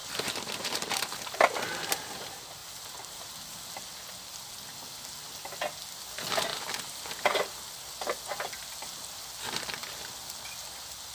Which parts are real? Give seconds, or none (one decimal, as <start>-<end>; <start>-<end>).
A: 1.1-2.6; 3.7-6.5; 7.6-11.1